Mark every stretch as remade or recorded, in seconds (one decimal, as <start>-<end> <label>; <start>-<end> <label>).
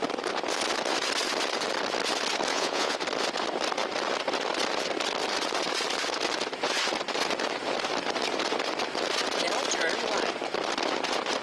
0.0-2.5 recorded; 2.5-3.0 remade; 3.0-11.4 recorded